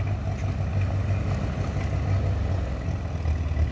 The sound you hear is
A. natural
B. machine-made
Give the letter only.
A